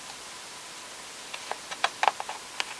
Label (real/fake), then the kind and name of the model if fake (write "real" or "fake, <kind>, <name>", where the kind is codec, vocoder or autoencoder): real